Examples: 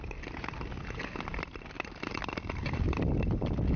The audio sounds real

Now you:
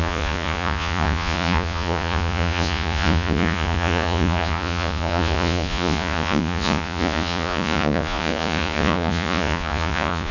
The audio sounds fake